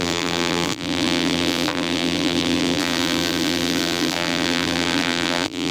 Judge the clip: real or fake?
fake